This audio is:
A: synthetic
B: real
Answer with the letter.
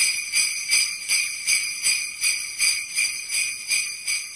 B